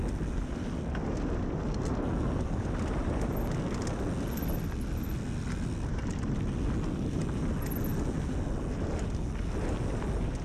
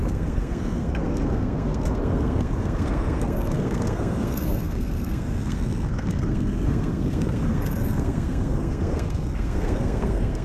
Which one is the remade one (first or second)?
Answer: second